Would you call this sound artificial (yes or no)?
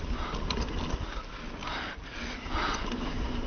no